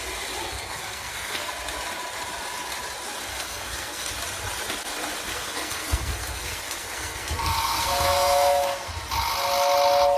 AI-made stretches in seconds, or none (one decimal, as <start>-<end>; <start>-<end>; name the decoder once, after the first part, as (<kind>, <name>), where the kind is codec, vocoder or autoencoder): 0.4-1.5 (codec, SNAC); 3.3-4.1; 5.3-8.9